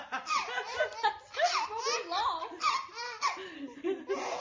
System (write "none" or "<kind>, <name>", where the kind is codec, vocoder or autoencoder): none